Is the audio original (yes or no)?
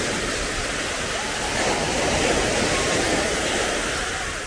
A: yes